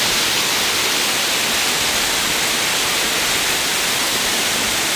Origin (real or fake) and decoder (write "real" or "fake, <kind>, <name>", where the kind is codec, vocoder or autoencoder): real